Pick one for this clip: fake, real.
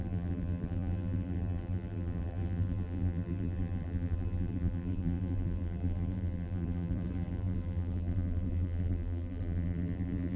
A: fake